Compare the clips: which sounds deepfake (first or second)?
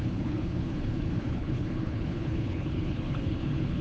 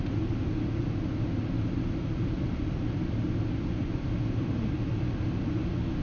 first